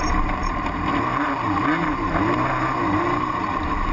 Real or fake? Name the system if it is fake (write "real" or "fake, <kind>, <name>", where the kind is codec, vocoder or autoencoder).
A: fake, vocoder, BigVGAN v2